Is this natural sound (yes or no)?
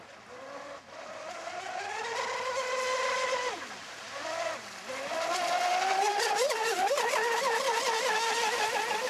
yes